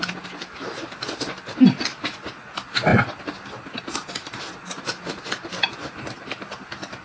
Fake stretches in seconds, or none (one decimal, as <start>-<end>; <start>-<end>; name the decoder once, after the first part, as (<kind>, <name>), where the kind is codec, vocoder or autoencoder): none